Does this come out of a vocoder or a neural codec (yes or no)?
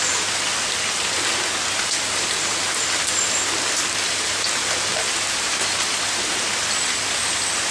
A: no